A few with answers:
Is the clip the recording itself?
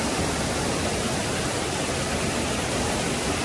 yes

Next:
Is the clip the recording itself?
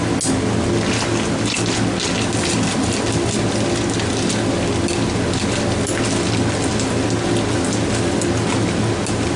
yes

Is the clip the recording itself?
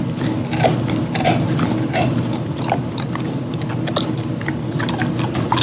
yes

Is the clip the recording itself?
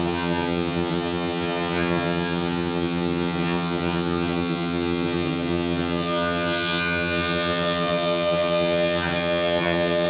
no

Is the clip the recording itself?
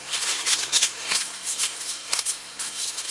no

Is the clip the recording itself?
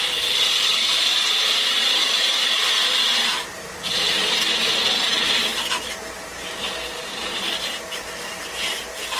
yes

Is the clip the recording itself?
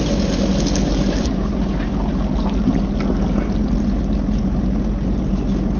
yes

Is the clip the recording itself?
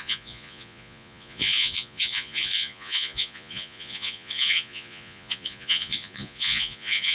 no